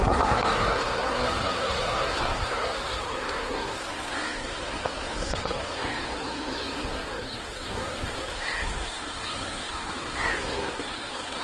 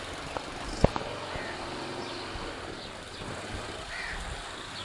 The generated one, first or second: first